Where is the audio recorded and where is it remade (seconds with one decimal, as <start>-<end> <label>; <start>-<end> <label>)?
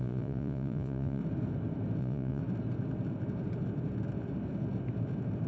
0.0-1.2 remade; 1.2-2.0 recorded; 2.0-2.4 remade; 2.4-5.5 recorded